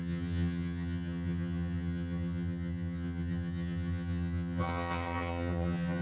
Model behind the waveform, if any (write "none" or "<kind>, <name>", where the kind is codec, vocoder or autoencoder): vocoder, HiFi-GAN